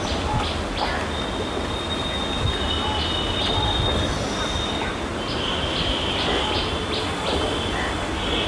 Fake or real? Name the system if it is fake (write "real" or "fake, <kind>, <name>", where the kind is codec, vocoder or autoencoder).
real